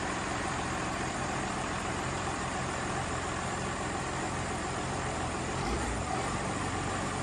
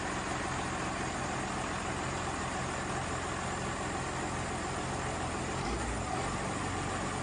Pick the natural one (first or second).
second